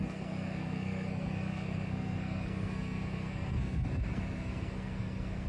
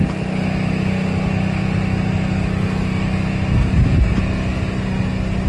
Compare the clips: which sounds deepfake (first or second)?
first